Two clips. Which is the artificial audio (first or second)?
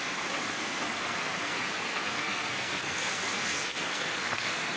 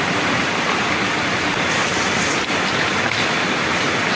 first